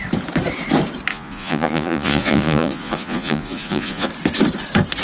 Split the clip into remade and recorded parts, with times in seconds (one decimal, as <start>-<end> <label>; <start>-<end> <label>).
0.0-1.1 recorded; 1.1-4.1 remade; 4.1-5.0 recorded